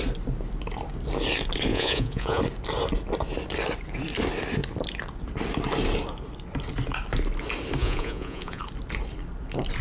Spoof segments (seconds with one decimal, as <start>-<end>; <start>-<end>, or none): 1.7-2.4; 7.8-8.6